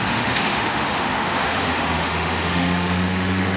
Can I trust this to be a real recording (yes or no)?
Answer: no